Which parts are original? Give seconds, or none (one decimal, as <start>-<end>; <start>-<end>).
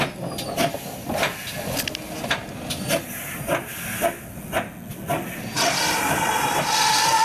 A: 0.0-7.2